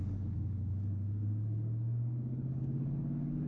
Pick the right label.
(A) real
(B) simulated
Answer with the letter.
B